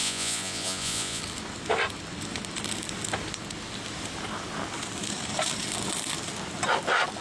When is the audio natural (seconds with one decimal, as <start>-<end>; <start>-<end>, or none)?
1.2-7.2